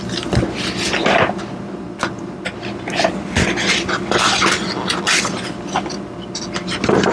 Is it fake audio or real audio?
real